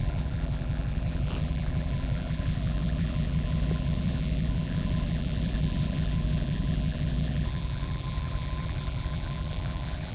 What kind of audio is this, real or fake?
fake